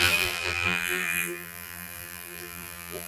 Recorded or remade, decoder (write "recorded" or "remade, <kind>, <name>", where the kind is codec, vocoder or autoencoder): remade, vocoder, BigVGAN v2